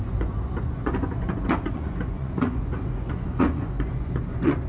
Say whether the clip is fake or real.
fake